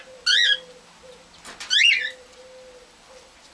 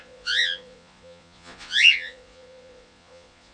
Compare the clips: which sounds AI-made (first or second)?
second